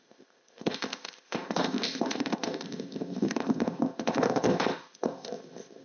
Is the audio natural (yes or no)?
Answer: no